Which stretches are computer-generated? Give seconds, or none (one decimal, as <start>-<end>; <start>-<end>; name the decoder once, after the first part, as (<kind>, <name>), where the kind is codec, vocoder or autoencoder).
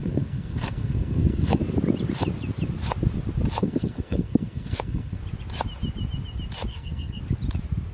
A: 0.0-1.6 (codec, SNAC); 3.6-5.2; 6.7-7.2